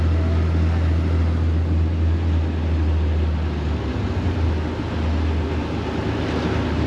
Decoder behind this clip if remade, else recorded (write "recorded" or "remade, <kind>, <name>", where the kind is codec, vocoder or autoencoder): recorded